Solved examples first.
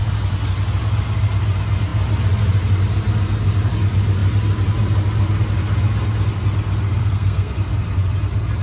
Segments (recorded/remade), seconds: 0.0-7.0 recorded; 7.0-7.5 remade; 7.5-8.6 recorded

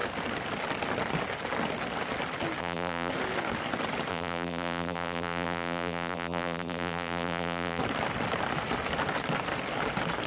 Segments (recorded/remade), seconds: 0.0-2.6 recorded; 2.6-3.1 remade; 3.1-4.1 recorded; 4.1-7.8 remade; 7.8-10.3 recorded

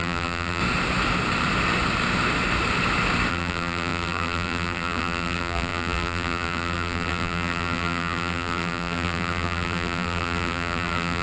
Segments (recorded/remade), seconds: 0.0-0.6 remade; 0.6-3.3 recorded; 3.3-11.2 remade

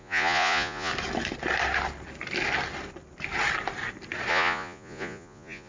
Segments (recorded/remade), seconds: 0.0-0.9 remade; 0.9-4.3 recorded; 4.3-5.7 remade

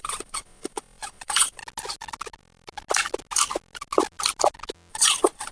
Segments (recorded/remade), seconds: 0.0-1.6 remade; 1.6-4.9 recorded; 4.9-5.5 remade

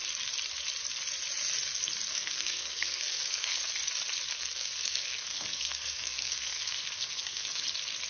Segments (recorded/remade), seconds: 0.0-2.1 recorded; 2.1-3.7 remade; 3.7-4.3 recorded; 4.3-7.6 remade; 7.6-8.1 recorded

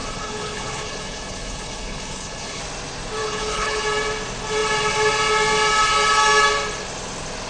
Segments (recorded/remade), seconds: 0.0-2.6 remade; 2.6-3.2 recorded; 3.2-3.8 remade; 3.8-7.5 recorded